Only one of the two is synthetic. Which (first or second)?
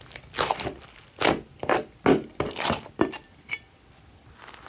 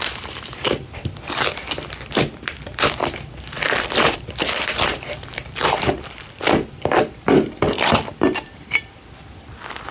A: second